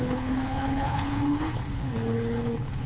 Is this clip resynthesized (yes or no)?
yes